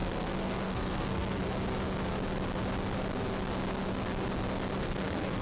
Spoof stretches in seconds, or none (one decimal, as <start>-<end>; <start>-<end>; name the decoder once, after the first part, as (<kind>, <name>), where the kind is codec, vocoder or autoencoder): 0.0-1.5 (codec, SNAC); 4.8-5.4